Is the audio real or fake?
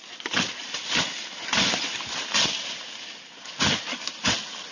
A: real